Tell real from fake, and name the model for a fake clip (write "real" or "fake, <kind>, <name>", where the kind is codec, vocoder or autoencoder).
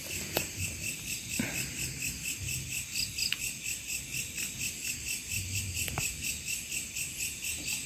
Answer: real